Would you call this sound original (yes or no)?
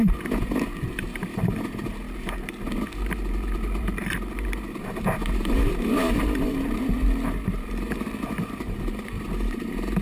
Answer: no